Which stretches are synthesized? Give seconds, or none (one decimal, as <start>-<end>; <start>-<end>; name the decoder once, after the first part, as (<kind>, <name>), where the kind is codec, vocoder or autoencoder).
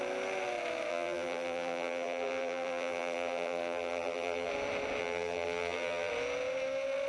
0.9-4.5 (vocoder, BigVGAN v2); 5.0-6.1